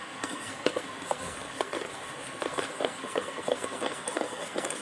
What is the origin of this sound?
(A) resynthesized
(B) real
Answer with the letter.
A